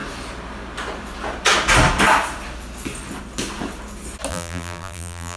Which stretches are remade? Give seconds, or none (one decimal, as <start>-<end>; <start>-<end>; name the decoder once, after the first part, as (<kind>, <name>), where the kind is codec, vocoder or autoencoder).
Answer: 4.3-5.4 (vocoder, BigVGAN v2)